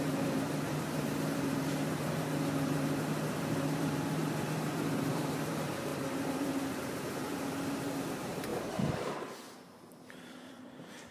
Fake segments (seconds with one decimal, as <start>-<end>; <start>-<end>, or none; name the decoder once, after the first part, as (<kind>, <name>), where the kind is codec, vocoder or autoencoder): 0.0-11.1 (vocoder, BigVGAN v2)